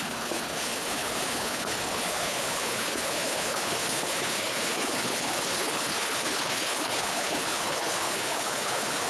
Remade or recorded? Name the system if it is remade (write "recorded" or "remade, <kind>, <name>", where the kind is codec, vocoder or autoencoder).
remade, codec, HILCodec